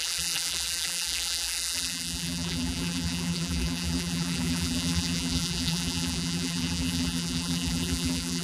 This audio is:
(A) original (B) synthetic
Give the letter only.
B